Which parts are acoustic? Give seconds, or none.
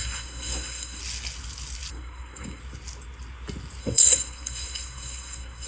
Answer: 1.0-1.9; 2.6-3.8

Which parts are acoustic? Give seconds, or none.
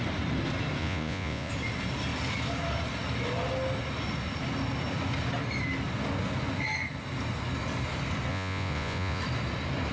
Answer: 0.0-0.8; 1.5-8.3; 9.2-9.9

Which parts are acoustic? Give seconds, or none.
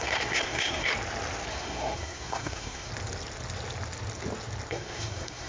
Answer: 0.9-1.5; 2.9-4.7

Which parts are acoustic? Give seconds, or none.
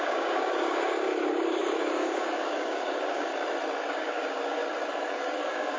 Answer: 3.3-3.9; 4.6-5.1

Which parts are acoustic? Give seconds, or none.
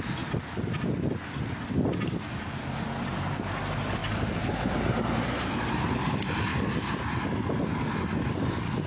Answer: 0.0-4.0; 5.5-8.9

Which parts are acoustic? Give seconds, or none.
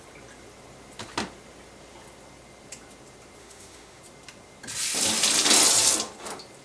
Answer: 0.0-3.4; 4.0-6.6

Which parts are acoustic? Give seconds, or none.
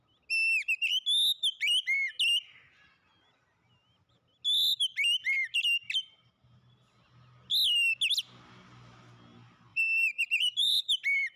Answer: 0.0-9.7; 11.0-11.4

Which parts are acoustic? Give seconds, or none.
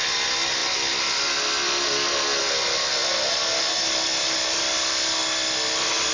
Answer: 0.0-6.1